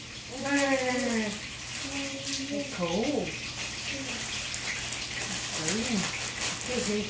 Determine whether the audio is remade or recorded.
recorded